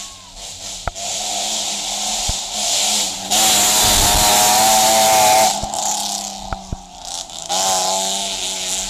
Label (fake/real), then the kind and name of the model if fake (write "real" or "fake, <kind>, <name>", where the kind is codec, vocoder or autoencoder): real